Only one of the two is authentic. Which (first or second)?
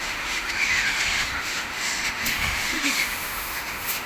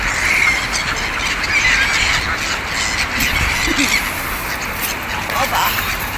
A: second